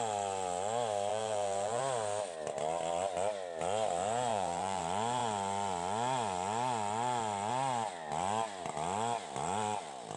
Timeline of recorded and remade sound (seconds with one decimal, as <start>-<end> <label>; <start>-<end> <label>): 0.0-1.1 recorded; 1.1-1.8 remade; 1.8-4.3 recorded; 4.3-4.8 remade; 4.8-10.2 recorded